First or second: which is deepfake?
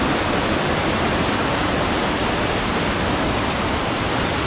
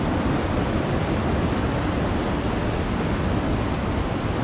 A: first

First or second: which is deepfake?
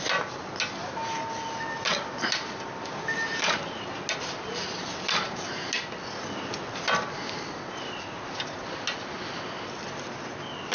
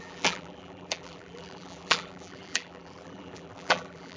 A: second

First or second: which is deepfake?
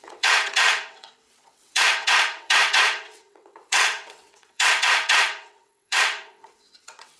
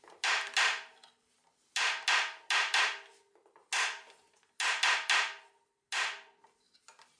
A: first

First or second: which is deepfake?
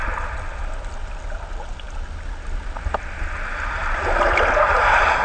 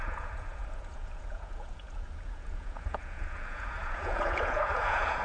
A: second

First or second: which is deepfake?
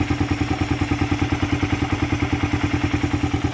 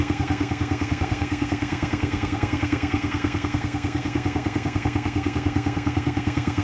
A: second